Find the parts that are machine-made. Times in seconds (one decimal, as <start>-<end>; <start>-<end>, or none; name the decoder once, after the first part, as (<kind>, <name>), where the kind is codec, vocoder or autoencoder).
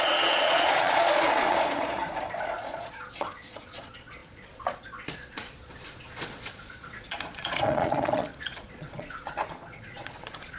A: 0.0-2.0 (vocoder, Vocos); 2.6-10.6